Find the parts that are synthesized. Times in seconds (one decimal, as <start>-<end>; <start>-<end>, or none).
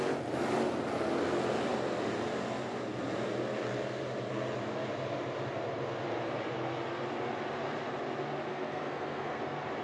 8.5-9.4